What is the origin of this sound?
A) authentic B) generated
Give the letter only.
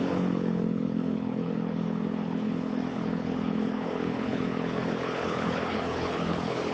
B